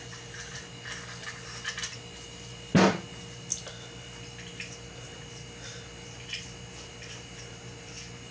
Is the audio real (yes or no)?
yes